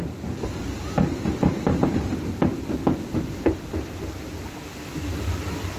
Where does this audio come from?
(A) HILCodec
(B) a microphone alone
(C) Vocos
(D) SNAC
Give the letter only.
B